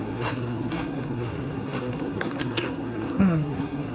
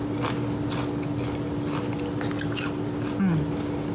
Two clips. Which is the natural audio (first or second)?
second